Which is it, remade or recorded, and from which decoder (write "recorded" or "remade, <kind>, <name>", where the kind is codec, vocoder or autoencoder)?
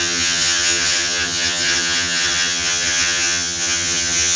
remade, vocoder, HiFi-GAN